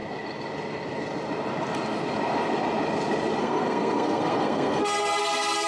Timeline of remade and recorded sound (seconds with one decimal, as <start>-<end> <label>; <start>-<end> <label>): 0.0-3.4 recorded; 3.4-5.7 remade